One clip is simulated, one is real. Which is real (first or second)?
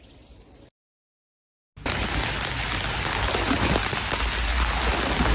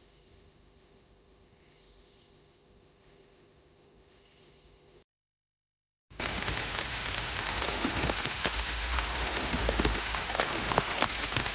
first